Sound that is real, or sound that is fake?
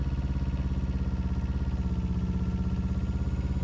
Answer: real